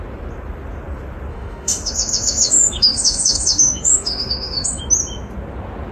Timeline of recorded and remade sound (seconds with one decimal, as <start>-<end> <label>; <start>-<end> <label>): 0.0-1.3 recorded; 1.3-4.8 remade; 4.8-5.9 recorded